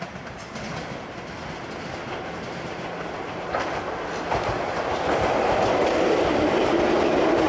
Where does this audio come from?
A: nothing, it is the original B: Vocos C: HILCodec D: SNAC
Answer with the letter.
A